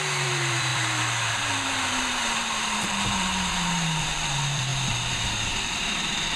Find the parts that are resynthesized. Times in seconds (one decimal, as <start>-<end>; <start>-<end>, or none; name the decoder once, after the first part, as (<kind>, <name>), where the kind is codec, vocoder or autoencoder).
0.0-6.4 (vocoder, BigVGAN v2)